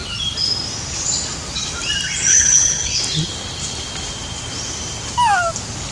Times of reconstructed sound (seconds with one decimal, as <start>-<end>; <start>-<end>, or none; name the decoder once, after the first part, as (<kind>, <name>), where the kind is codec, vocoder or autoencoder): 2.3-3.0 (codec, HILCodec)